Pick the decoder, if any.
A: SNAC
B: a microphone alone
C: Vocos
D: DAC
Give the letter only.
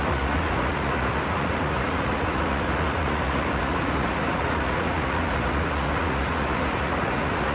C